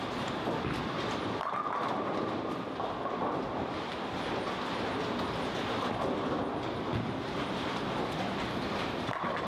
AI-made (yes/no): no